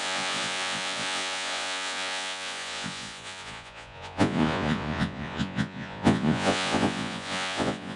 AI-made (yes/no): yes